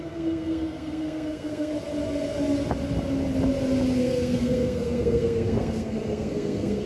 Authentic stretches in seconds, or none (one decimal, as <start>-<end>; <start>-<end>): 1.7-4.0